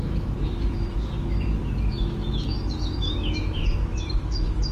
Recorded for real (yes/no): no